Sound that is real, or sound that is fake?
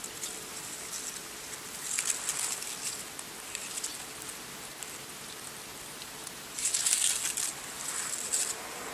real